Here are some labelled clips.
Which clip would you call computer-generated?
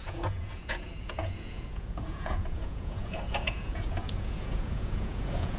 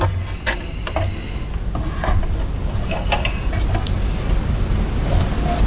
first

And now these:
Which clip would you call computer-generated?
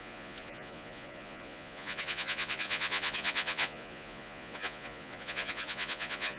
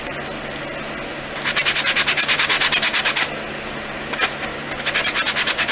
first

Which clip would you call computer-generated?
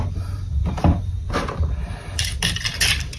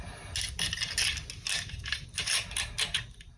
first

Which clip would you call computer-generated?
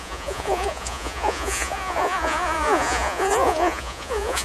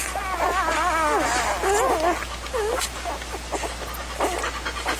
first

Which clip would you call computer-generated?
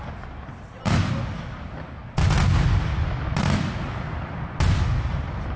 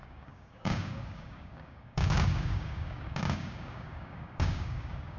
second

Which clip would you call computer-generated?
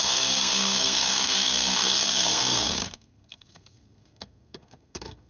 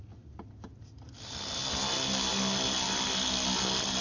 first